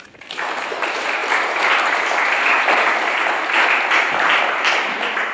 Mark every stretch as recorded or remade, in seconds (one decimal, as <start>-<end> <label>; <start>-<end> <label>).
0.0-5.3 recorded